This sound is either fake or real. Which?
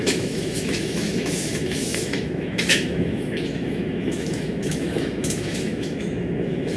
fake